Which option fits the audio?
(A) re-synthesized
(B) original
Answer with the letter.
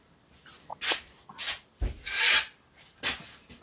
B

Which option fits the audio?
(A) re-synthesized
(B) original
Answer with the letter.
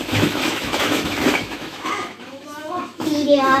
A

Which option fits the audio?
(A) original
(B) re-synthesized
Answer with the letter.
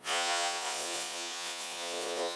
B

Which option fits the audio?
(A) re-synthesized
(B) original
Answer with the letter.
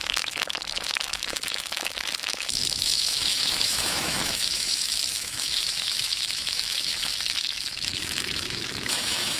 A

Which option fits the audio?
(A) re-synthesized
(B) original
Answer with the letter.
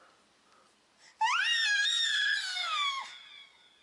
B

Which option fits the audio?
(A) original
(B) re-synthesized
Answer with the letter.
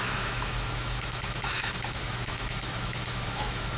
B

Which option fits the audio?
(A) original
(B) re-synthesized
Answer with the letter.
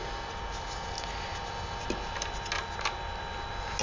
A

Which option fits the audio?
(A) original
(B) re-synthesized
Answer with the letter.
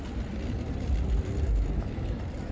B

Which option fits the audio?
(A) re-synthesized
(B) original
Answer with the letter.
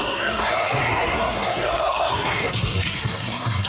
A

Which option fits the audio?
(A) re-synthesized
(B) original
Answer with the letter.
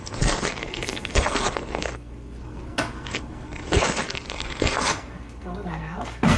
A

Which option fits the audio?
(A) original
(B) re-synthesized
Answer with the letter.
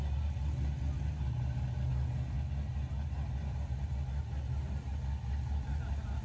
A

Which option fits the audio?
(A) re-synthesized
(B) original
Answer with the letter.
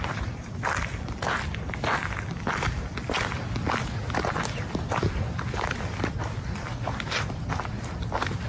B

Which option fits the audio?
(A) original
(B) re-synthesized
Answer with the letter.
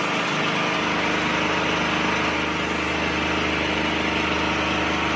A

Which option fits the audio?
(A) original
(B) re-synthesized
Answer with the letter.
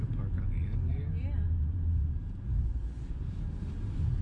A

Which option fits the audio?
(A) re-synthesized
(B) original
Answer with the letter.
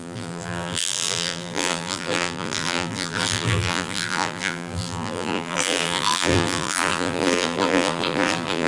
A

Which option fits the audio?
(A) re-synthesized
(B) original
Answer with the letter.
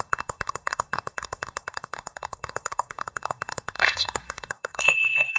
A